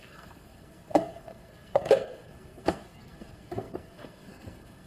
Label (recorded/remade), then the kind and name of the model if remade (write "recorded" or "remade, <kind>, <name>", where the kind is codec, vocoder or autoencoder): remade, codec, SNAC